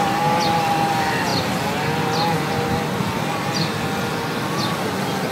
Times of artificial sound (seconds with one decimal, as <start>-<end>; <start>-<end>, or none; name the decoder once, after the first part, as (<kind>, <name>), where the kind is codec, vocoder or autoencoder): none